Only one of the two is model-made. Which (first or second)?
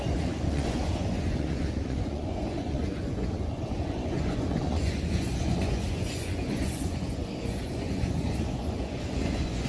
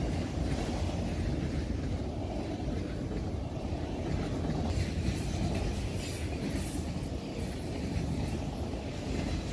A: first